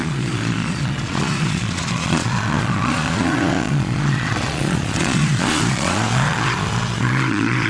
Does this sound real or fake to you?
fake